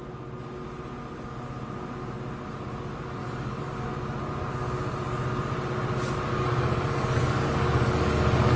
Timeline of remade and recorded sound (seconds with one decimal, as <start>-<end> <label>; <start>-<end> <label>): 0.0-3.2 recorded; 3.2-3.9 remade; 3.9-6.3 recorded; 6.3-8.6 remade

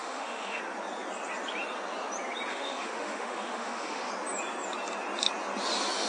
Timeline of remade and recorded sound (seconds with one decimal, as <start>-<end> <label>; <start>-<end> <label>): 0.0-0.6 remade; 0.6-2.5 recorded; 2.5-4.1 remade; 4.1-6.1 recorded

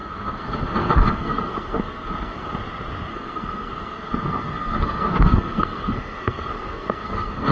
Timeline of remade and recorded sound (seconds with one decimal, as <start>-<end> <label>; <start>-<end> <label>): 0.0-2.6 remade; 2.6-3.1 recorded; 3.1-7.5 remade

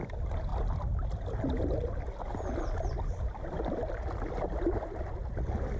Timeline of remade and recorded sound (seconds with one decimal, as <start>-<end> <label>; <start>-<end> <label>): 0.0-0.5 recorded; 0.5-1.9 remade; 1.9-5.8 recorded

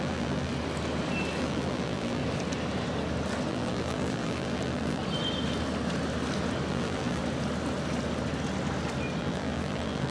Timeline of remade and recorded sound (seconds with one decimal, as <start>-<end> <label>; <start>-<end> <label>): 0.0-0.5 remade; 0.5-1.4 recorded; 1.4-2.2 remade; 2.2-3.5 recorded; 3.5-5.0 remade; 5.0-6.7 recorded; 6.7-7.2 remade; 7.2-9.2 recorded; 9.2-10.1 remade

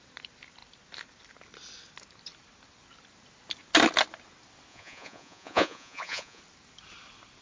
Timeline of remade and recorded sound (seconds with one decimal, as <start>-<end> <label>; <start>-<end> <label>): 0.0-4.7 recorded; 4.7-6.4 remade; 6.4-7.4 recorded

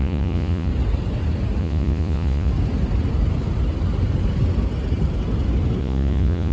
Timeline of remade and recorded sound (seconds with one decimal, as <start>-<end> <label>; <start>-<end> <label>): 0.0-0.7 remade; 0.7-1.6 recorded; 1.6-2.5 remade; 2.5-5.8 recorded; 5.8-6.5 remade

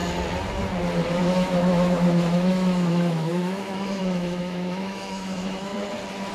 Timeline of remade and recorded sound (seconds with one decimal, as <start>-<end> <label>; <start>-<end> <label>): 0.0-1.2 recorded; 1.2-5.7 remade; 5.7-6.3 recorded